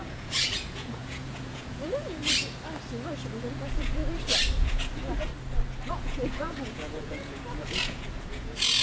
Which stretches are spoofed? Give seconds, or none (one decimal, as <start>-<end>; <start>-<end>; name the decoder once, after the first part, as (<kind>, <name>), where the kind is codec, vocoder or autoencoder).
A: 0.0-2.2 (vocoder, Vocos); 3.4-4.0; 4.6-5.3; 5.9-8.8